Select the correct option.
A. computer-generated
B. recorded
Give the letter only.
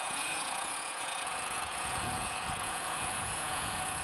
A